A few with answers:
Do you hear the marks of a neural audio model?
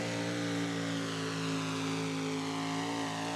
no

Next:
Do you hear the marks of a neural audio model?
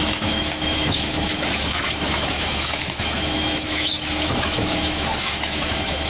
yes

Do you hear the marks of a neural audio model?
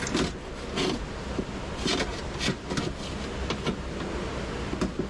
no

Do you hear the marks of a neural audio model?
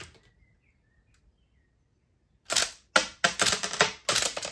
no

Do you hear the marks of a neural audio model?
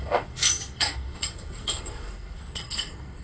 yes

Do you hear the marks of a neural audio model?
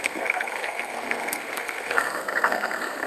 yes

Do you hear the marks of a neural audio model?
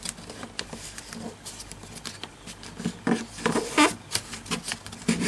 no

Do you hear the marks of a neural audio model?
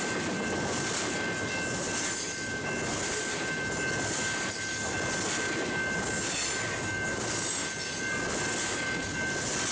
no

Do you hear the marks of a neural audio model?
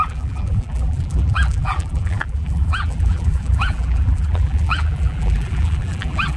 yes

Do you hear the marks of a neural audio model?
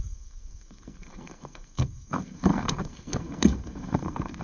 yes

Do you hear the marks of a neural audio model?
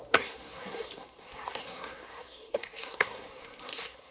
yes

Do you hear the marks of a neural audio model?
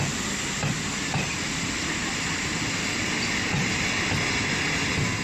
no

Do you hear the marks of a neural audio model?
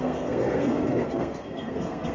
yes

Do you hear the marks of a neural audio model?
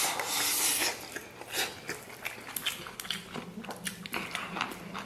no